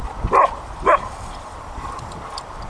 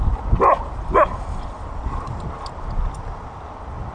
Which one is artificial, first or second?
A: first